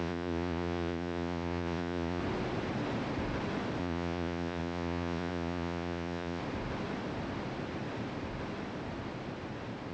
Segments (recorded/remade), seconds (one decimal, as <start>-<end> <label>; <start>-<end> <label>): 0.0-2.2 remade; 2.2-3.8 recorded; 3.8-6.4 remade; 6.4-9.9 recorded